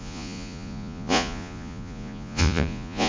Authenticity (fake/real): fake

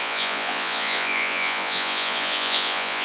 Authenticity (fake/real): fake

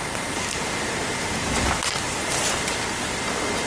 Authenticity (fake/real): real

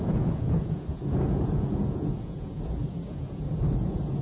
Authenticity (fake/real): fake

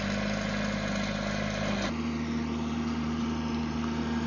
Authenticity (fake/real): real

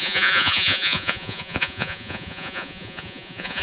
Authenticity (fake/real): fake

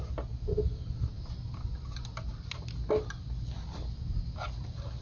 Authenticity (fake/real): real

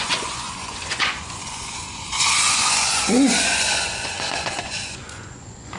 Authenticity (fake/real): fake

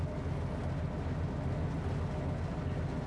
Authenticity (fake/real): real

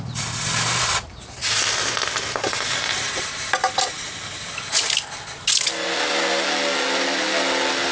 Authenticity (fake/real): real